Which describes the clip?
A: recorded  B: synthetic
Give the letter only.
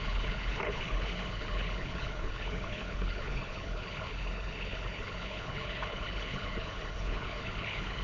B